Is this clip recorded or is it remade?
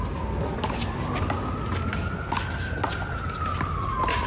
recorded